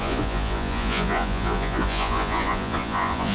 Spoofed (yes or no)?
yes